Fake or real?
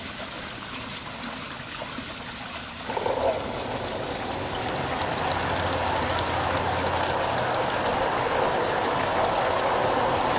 real